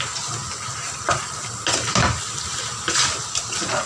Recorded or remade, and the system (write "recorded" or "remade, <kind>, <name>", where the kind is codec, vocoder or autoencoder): recorded